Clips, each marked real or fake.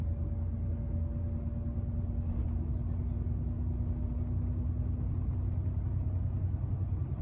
real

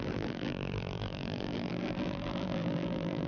fake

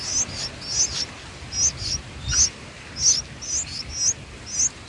real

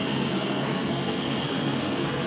fake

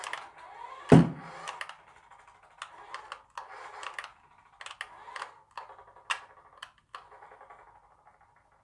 real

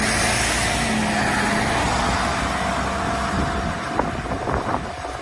real